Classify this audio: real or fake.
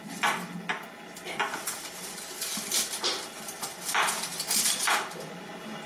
real